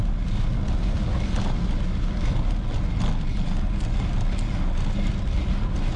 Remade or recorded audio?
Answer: recorded